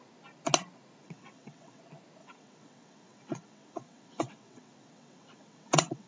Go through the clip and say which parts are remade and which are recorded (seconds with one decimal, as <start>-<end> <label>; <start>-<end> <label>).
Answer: 0.0-1.0 recorded; 1.0-1.8 remade; 1.8-2.2 recorded; 2.2-6.1 remade